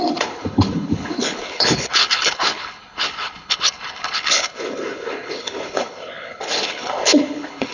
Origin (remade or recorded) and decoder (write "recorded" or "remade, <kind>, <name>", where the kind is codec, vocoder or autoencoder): remade, codec, HILCodec